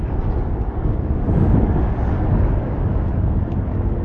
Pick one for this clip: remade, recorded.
remade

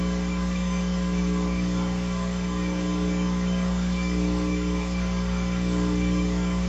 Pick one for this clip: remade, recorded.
remade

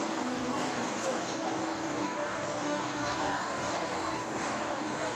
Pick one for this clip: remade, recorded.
remade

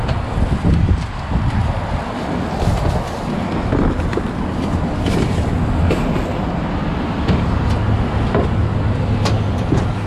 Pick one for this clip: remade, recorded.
recorded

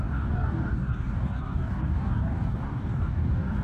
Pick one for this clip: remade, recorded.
remade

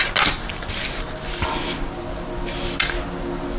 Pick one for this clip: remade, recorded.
recorded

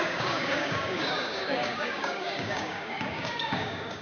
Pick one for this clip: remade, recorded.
remade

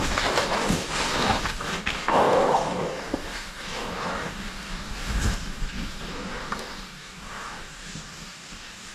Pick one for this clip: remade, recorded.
remade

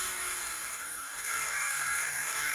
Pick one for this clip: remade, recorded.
remade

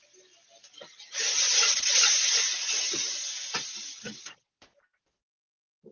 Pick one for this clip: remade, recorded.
recorded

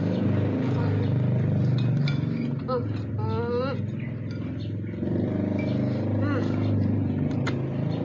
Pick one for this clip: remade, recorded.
recorded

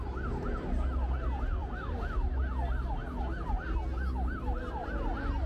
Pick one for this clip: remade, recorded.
recorded